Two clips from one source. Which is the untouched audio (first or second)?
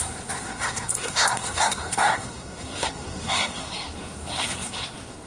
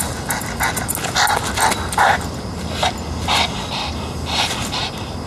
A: second